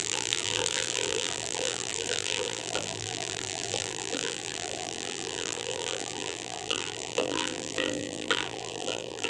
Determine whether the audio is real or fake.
fake